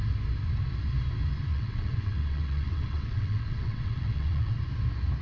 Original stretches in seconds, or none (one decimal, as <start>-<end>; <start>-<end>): 0.0-1.5; 4.6-5.2